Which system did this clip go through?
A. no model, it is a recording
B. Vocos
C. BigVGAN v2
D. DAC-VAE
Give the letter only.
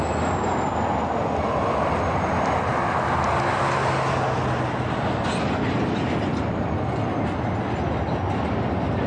A